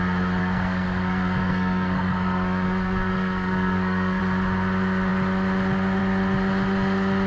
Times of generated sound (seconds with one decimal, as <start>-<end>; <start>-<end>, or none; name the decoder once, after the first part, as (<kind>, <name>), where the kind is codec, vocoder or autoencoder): 0.4-4.2 (codec, SNAC)